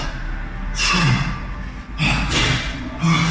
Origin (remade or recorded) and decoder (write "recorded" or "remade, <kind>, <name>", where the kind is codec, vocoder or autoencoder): recorded